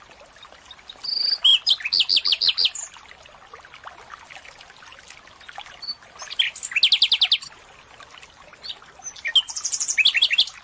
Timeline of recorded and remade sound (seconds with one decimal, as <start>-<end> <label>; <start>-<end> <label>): 0.0-10.6 recorded